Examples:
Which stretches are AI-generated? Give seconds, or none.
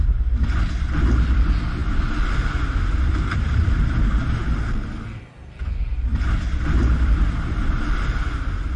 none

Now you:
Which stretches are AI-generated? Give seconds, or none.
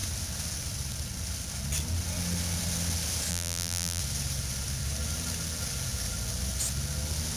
3.3-4.0 (vocoder, BigVGAN v2)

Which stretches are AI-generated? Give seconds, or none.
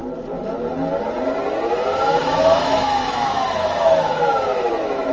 2.2-5.1 (autoencoder, DAC-VAE)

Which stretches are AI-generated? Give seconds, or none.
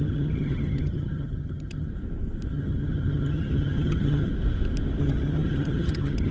0.0-1.9 (vocoder, HiFi-GAN); 2.5-4.3; 5.0-6.3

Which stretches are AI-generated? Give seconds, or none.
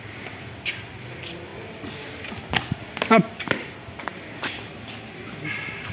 none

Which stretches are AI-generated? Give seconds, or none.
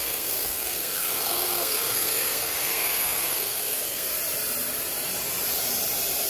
0.0-4.1 (codec, SNAC)